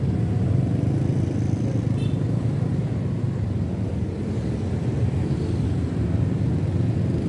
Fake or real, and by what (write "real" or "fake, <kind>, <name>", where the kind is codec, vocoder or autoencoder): real